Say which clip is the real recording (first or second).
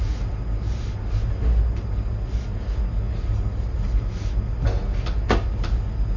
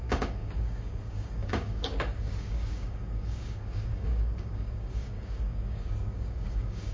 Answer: first